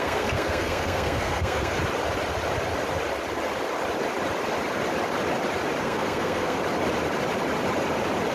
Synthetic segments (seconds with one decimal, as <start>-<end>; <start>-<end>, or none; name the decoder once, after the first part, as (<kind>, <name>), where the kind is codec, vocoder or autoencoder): 0.0-1.8 (codec, SNAC); 5.8-6.6